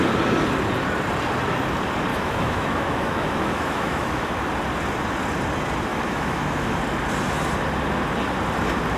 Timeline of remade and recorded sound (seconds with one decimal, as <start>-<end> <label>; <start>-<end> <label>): 0.0-2.1 recorded; 2.1-4.5 remade; 4.5-5.9 recorded; 5.9-6.8 remade; 6.8-9.0 recorded